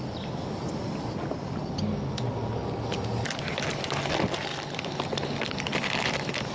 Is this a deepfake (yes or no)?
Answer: no